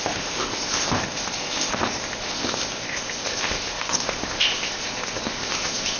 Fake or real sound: fake